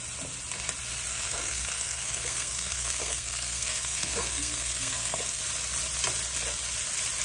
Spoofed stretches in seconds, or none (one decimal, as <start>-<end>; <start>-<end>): 1.1-5.4